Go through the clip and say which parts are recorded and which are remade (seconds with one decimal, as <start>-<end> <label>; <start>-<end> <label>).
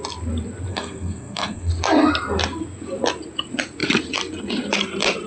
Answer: 0.0-0.7 recorded; 0.7-1.7 remade; 1.7-5.3 recorded